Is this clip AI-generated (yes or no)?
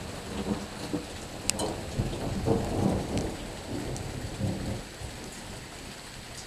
no